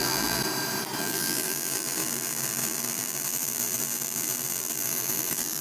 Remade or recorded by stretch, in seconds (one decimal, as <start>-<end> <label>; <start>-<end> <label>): 0.0-0.4 remade; 0.4-1.0 recorded; 1.0-5.6 remade